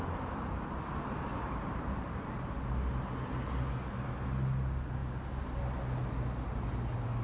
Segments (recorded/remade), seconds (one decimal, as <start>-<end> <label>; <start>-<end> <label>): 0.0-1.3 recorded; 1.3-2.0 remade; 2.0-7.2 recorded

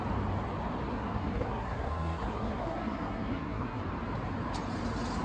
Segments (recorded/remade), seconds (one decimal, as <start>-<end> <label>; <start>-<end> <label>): 0.0-0.9 recorded; 0.9-3.8 remade; 3.8-5.2 recorded

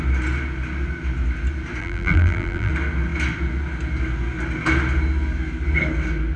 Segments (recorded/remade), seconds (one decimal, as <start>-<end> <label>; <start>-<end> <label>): 0.0-1.8 recorded; 1.8-2.7 remade; 2.7-6.4 recorded

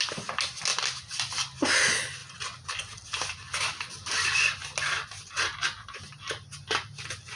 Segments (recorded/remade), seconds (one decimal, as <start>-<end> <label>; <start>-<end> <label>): 0.0-7.4 recorded